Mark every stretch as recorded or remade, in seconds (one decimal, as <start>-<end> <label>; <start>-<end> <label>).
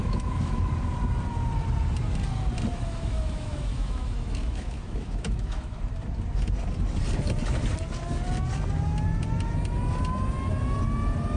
0.0-0.7 remade; 0.7-2.7 recorded; 2.7-5.8 remade; 5.8-11.4 recorded